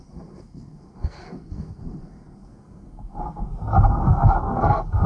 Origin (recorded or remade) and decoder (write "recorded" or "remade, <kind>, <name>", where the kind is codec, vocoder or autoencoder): remade, codec, SNAC